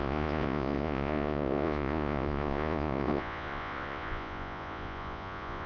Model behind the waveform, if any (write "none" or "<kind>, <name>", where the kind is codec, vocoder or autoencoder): vocoder, Vocos